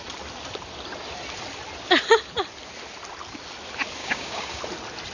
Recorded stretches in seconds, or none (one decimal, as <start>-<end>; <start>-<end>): 0.0-4.0; 4.6-5.1

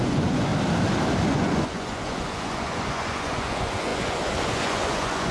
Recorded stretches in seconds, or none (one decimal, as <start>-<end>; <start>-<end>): 0.5-1.3

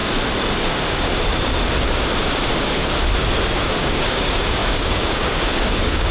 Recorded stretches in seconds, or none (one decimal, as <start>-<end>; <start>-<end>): 0.0-3.7

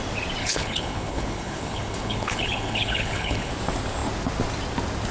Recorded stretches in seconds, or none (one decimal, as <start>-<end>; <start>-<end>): 0.0-0.4; 3.5-5.1

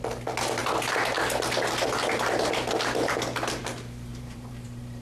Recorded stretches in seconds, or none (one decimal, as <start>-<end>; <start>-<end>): 0.0-4.1

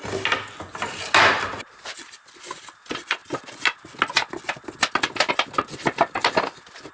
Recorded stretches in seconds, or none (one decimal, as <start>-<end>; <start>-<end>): 0.0-6.9

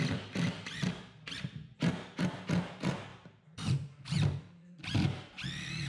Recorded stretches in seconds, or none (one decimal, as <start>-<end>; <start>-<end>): 0.0-3.1